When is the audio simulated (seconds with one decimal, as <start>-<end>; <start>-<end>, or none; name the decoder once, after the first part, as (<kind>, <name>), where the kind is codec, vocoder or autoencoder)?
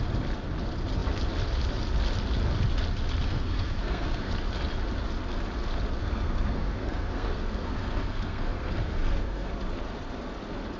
3.3-4.3 (codec, SNAC); 6.0-9.5